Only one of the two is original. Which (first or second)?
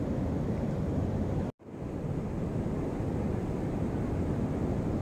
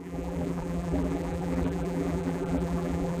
first